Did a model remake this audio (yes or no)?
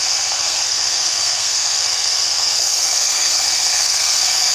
yes